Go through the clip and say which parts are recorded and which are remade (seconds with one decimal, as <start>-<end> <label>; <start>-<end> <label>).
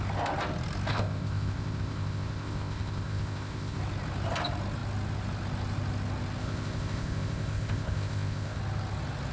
0.0-0.9 recorded; 0.9-3.8 remade; 3.8-6.4 recorded; 6.4-8.6 remade; 8.6-9.3 recorded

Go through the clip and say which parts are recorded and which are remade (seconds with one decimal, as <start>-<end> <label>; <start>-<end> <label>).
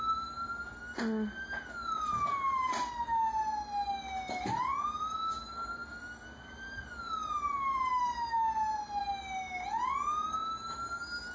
0.0-11.3 recorded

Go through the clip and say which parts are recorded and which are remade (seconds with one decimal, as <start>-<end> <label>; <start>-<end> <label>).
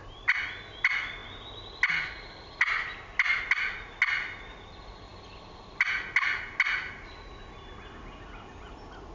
0.0-9.1 recorded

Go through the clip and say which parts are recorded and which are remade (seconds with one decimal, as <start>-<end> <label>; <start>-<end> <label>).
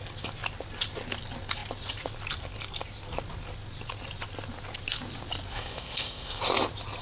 0.0-5.5 recorded; 5.5-6.4 remade; 6.4-7.0 recorded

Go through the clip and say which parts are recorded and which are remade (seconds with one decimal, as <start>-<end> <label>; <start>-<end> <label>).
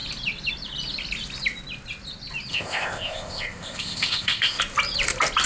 0.0-2.5 recorded; 2.5-4.6 remade; 4.6-5.5 recorded